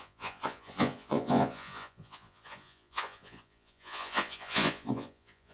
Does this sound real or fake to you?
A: fake